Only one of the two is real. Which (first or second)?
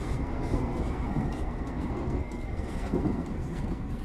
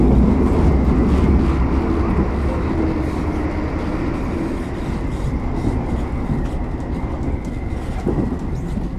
second